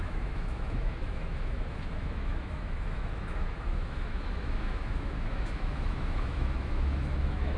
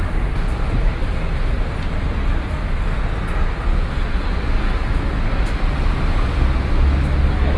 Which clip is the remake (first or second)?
first